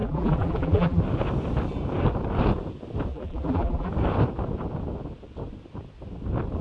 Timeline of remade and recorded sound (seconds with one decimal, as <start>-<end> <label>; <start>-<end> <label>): 0.0-1.0 remade; 1.0-3.1 recorded; 3.1-3.9 remade; 3.9-6.6 recorded